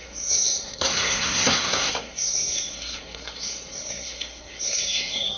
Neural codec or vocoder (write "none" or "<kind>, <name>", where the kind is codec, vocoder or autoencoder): codec, SNAC